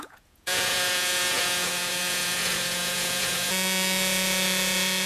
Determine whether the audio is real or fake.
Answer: fake